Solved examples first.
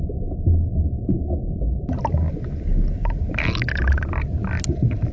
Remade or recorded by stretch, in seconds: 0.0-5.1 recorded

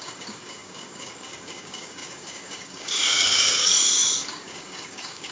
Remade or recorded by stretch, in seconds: 0.0-5.3 remade